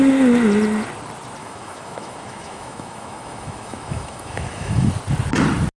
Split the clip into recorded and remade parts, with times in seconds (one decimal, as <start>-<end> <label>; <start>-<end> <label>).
0.0-1.4 recorded; 1.4-4.9 remade; 4.9-5.8 recorded